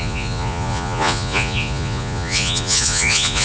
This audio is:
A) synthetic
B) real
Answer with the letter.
A